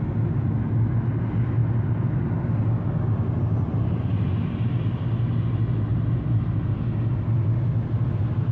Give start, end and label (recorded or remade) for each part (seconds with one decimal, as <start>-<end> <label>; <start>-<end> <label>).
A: 0.0-8.5 recorded